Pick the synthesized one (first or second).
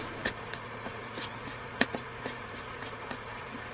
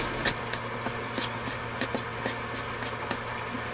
first